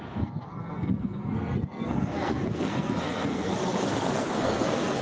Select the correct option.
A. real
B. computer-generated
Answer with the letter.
B